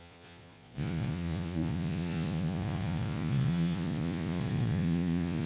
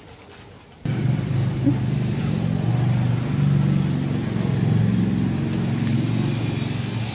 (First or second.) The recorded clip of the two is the second